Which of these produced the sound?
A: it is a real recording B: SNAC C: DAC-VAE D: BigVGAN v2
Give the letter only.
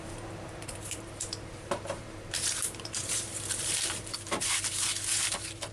D